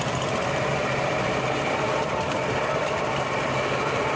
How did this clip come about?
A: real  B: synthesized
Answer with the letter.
B